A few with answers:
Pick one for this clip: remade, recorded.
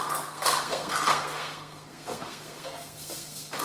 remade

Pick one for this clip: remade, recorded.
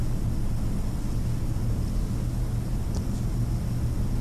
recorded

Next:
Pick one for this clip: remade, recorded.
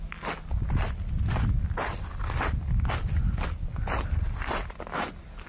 recorded